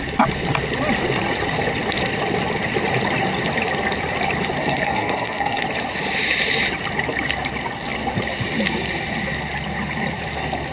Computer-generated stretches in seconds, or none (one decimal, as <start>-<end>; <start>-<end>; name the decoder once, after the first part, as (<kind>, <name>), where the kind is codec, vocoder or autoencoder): 4.6-5.6 (codec, SNAC)